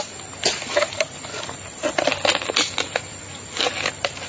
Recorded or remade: recorded